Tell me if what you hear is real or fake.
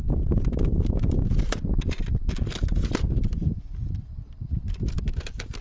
real